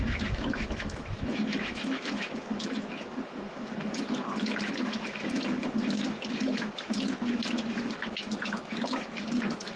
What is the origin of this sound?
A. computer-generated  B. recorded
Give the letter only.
A